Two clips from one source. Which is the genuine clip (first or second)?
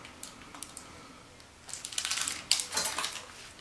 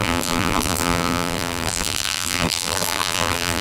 first